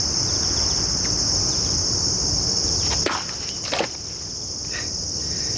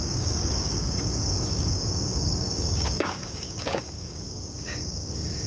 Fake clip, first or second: second